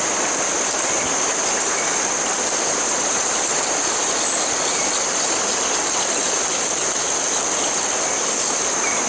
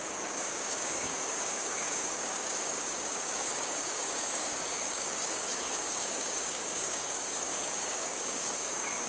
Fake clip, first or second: second